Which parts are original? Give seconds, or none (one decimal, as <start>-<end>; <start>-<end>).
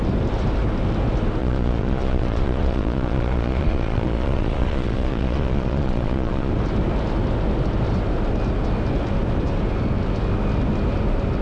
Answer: 0.0-1.4; 6.5-11.4